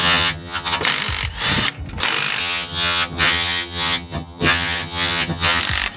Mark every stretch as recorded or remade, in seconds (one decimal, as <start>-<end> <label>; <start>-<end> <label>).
0.0-0.8 remade; 0.8-2.4 recorded; 2.4-5.6 remade; 5.6-6.0 recorded